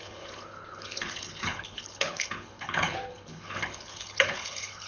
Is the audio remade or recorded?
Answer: remade